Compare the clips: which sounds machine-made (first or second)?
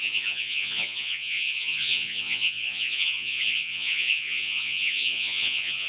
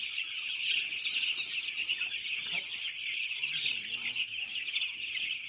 first